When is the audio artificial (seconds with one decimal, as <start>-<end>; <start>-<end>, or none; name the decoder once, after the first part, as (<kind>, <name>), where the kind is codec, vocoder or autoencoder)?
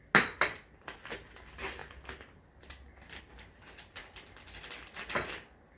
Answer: none